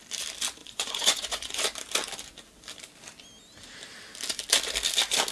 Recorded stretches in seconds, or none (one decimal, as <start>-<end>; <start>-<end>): 0.0-0.6; 1.6-5.3